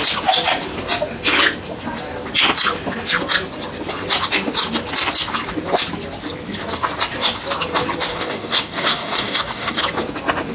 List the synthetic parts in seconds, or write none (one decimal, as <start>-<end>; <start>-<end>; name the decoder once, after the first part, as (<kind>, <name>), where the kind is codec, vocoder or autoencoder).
8.1-9.8 (codec, DAC)